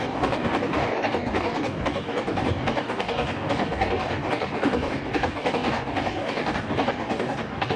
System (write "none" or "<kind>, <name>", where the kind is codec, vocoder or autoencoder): codec, DAC